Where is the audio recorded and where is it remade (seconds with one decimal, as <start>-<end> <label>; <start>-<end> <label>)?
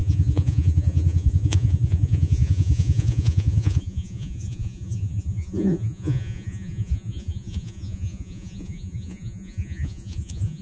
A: 0.0-10.6 remade